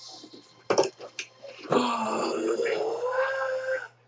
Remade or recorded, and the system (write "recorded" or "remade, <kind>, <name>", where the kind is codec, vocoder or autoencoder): recorded